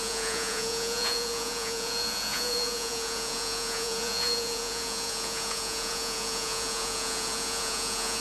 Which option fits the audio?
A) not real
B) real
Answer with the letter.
A